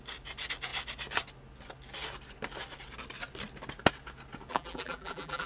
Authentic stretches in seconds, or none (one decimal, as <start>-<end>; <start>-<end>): 0.0-4.5